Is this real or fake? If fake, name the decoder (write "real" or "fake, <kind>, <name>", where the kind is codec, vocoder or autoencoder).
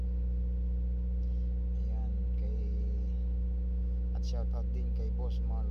real